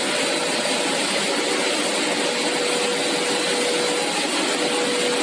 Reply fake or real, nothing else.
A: real